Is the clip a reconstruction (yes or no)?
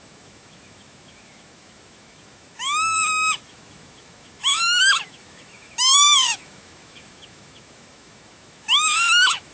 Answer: yes